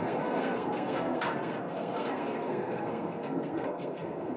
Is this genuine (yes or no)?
no